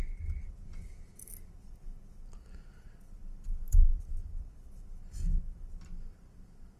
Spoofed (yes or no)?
no